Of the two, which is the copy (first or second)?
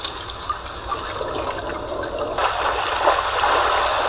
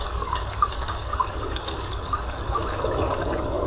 second